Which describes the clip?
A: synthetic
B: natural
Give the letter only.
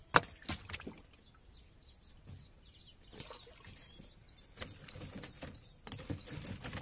B